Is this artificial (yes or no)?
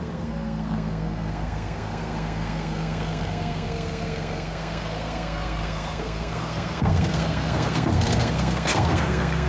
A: yes